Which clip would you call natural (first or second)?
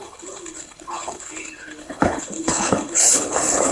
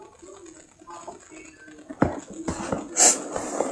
second